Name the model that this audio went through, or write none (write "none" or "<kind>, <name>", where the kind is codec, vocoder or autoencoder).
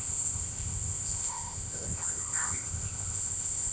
codec, ZipCodec